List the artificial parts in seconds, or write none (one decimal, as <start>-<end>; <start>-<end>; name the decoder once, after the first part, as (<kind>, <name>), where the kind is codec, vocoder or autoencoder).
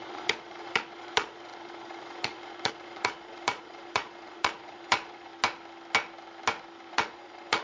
0.0-5.3 (vocoder, Vocos); 6.9-7.6